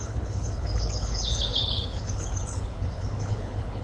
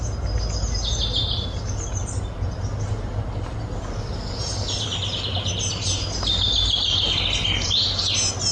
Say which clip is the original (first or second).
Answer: second